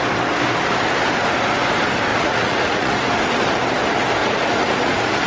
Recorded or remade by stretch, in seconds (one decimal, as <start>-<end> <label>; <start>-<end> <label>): 0.0-2.1 recorded; 2.1-3.0 remade; 3.0-4.2 recorded; 4.2-5.3 remade